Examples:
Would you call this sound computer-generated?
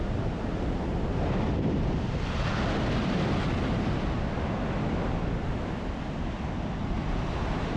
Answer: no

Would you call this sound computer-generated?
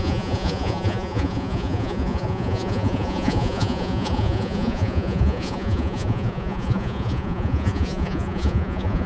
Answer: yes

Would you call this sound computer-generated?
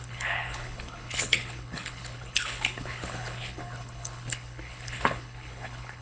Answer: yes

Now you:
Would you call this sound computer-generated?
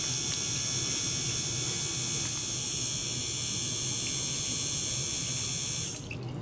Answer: no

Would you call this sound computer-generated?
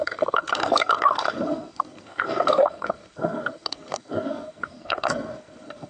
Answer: yes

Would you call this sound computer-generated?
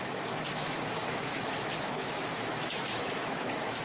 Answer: yes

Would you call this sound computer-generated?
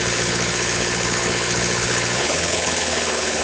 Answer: yes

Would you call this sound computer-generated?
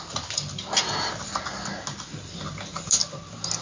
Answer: no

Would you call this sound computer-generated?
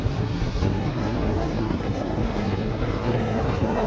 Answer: yes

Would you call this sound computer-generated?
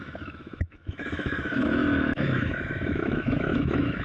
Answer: yes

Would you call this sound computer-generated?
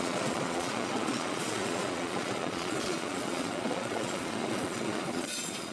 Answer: yes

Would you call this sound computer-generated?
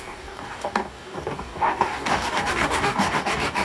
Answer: yes